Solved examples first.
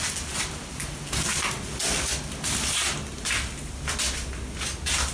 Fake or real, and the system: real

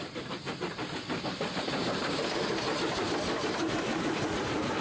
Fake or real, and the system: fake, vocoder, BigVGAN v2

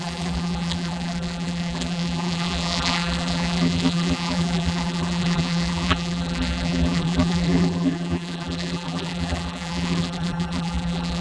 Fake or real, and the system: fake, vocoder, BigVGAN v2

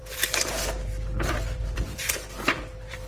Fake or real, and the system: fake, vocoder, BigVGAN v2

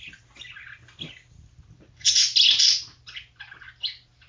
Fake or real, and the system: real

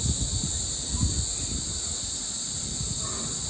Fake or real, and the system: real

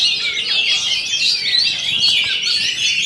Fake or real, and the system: real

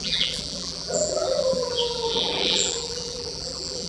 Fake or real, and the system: fake, vocoder, BigVGAN v2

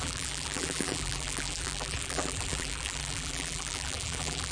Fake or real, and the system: fake, vocoder, BigVGAN v2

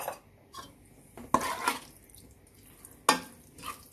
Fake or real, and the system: real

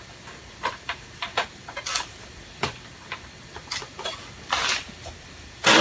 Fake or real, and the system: fake, vocoder, BigVGAN v2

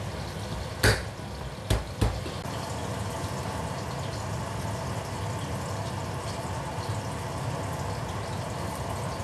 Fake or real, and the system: real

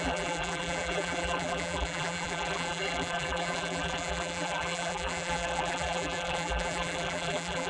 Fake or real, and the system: fake, vocoder, BigVGAN v2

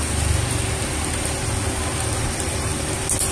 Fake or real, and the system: real